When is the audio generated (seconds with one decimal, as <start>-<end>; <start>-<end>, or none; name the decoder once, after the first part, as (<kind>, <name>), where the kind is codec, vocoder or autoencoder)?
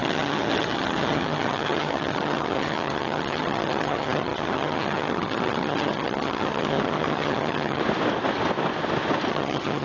0.0-7.8 (vocoder, HiFi-GAN); 9.3-9.8